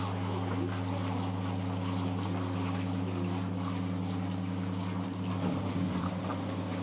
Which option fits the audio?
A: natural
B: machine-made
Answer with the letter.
A